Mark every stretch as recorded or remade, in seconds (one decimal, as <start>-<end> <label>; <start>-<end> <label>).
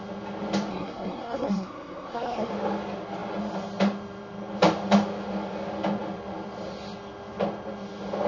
0.0-0.7 recorded; 0.7-2.5 remade; 2.5-8.3 recorded